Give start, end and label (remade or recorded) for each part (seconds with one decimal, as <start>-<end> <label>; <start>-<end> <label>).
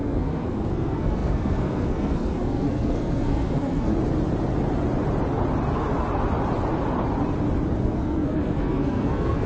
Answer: 0.0-3.9 remade; 3.9-7.8 recorded; 7.8-9.5 remade